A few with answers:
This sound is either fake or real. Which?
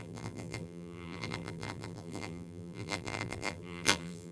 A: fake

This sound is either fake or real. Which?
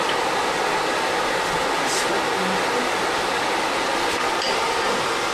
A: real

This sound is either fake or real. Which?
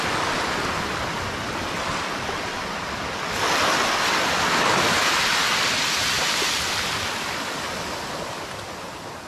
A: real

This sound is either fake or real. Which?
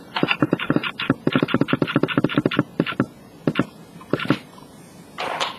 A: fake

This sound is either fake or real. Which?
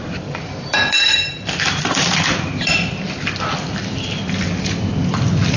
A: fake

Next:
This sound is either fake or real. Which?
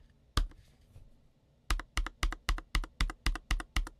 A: real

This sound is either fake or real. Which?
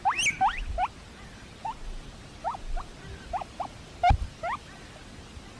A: real